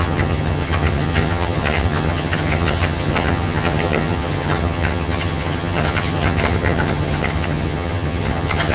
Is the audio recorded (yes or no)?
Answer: no